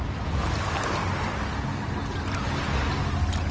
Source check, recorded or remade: recorded